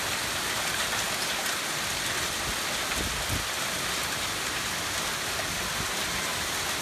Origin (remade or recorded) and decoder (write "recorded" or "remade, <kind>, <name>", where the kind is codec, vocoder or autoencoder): recorded